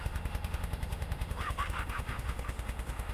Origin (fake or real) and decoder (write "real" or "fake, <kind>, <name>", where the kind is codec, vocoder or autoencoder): fake, autoencoder, DAC-VAE